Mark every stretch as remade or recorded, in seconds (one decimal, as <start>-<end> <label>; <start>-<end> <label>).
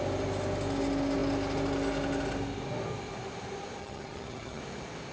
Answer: 0.0-3.8 recorded; 3.8-4.6 remade; 4.6-5.1 recorded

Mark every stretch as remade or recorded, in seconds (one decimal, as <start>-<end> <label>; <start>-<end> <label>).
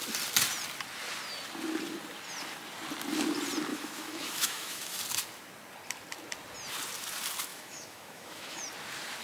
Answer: 0.0-3.7 recorded; 3.7-5.0 remade; 5.0-7.5 recorded; 7.5-8.6 remade; 8.6-9.2 recorded